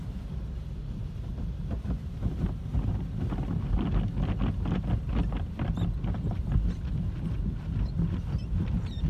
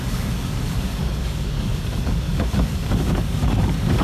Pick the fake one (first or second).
second